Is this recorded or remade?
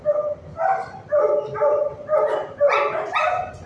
recorded